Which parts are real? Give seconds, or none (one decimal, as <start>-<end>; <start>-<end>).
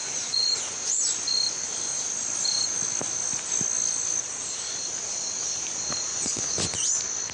1.0-6.1; 6.7-7.3